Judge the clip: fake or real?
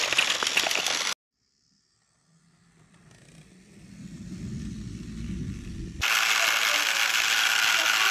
real